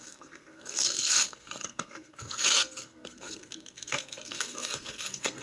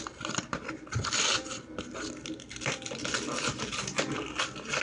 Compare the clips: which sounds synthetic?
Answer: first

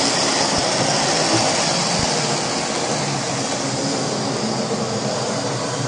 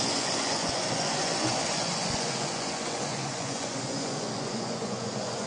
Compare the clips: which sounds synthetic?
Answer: second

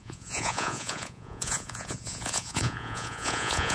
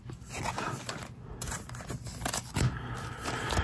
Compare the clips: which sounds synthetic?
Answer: first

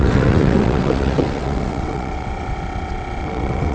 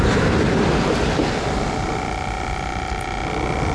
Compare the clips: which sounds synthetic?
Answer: first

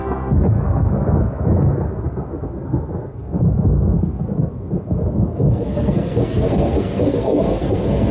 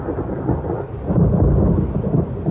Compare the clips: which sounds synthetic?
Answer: first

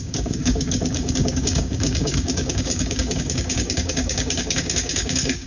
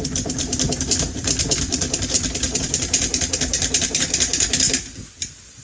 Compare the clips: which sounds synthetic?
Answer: first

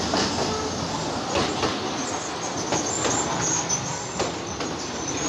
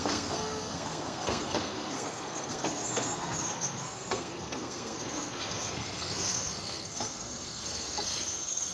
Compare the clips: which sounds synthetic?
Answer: second